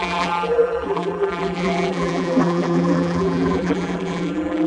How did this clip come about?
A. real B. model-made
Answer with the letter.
B